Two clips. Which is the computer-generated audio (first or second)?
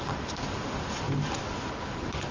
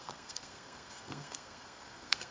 second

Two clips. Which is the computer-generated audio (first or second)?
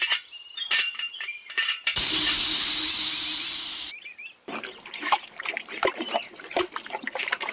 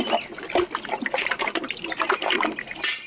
first